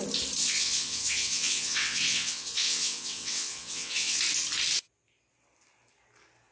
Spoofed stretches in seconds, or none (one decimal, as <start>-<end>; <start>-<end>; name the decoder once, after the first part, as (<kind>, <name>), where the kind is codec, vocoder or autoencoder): 0.4-4.2 (vocoder, WaveNeXt)